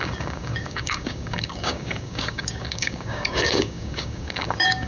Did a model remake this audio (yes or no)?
yes